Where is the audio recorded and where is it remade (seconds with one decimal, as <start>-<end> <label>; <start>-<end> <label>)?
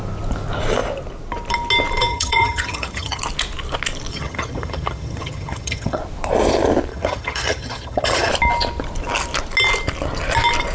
0.0-2.1 recorded; 2.1-3.2 remade; 3.2-4.1 recorded; 4.1-6.0 remade; 6.0-6.9 recorded; 6.9-8.3 remade; 8.3-10.7 recorded